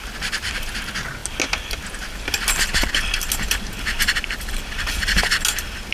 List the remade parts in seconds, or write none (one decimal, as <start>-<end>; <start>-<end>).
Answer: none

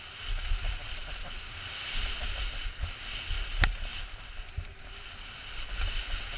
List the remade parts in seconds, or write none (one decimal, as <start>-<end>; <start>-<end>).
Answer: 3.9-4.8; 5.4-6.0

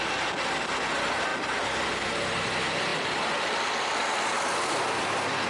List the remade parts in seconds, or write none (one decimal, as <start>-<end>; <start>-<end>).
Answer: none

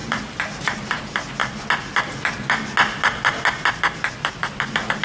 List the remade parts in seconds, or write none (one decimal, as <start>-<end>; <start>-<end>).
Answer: 0.0-1.0

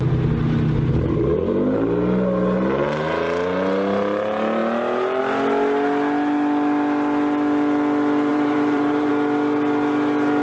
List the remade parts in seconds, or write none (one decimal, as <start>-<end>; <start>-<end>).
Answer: 8.3-9.1